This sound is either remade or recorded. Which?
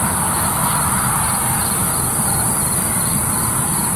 recorded